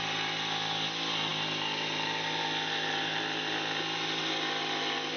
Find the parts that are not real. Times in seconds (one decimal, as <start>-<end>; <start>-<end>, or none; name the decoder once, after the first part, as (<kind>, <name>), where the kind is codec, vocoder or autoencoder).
none